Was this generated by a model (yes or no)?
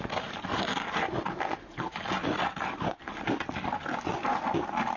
no